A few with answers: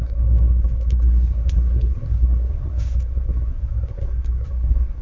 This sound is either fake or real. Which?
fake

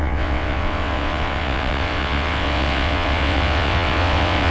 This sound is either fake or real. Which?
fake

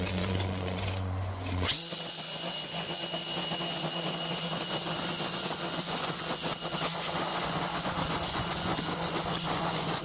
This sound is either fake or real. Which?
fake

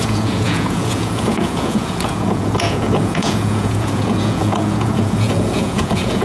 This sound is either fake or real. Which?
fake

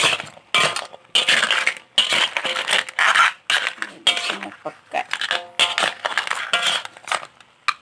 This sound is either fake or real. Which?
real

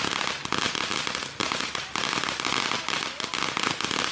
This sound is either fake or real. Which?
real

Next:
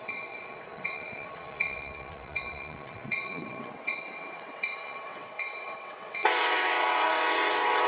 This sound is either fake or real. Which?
fake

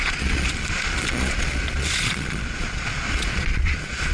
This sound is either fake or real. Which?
fake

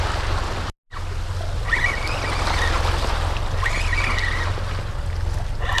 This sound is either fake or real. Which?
real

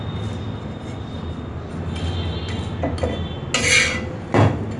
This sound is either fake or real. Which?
real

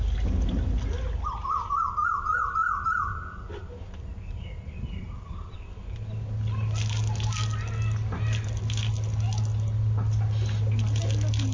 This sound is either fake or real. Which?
real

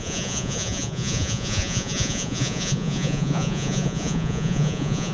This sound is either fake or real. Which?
fake